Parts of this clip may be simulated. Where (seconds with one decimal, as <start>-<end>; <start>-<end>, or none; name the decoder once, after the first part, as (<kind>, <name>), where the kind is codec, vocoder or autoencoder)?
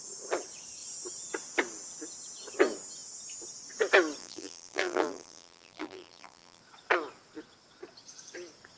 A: 4.2-6.6 (vocoder, BigVGAN v2)